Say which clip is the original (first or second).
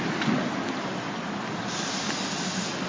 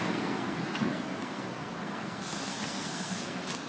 first